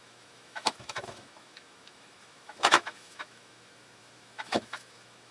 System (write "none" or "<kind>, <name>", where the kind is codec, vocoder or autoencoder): autoencoder, DAC-VAE